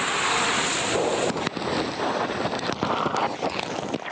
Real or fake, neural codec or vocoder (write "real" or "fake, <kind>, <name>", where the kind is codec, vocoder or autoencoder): real